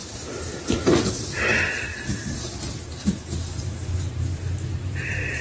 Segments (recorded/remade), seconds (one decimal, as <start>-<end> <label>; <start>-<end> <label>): 0.0-1.1 remade; 1.1-1.9 recorded; 1.9-5.4 remade